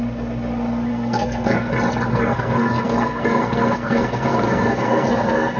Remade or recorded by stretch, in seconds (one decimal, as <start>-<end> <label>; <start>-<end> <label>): 0.0-0.9 recorded; 0.9-1.7 remade; 1.7-2.1 recorded; 2.1-5.6 remade